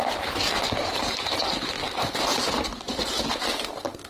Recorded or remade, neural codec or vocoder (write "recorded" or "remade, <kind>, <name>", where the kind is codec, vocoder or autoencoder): recorded